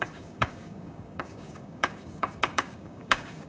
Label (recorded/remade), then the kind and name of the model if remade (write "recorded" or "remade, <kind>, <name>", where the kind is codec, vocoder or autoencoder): remade, codec, DAC